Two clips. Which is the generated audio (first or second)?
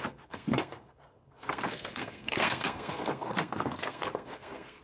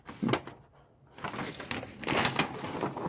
first